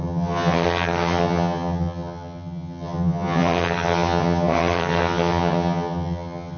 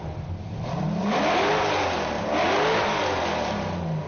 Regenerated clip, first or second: first